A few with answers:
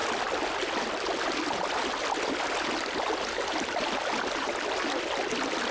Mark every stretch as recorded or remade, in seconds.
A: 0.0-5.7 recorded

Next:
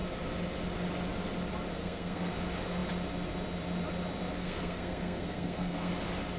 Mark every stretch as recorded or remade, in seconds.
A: 0.0-1.7 recorded; 1.7-2.3 remade; 2.3-4.4 recorded; 4.4-5.9 remade; 5.9-6.4 recorded

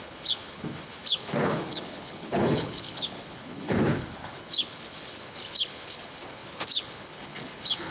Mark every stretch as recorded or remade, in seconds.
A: 0.0-7.9 remade